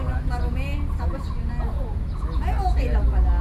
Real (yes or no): yes